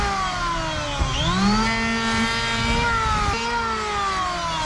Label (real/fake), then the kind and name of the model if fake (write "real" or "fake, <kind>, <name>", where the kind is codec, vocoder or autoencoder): real